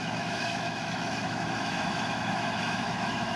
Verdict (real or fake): fake